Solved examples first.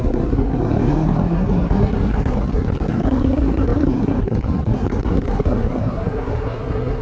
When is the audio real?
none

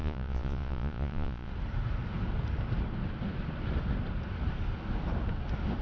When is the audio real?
1.5-5.8

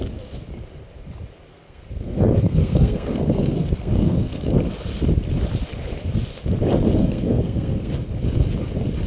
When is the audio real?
0.0-1.5; 4.5-7.0; 7.9-9.1